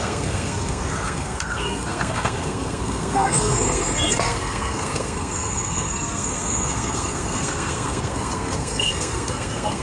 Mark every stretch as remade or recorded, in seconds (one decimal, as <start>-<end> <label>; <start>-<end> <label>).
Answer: 0.0-9.8 remade